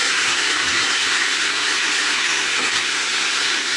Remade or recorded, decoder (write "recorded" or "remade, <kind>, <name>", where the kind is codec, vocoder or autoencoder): remade, codec, SNAC